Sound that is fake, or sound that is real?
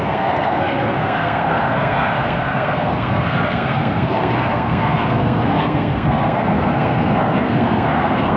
fake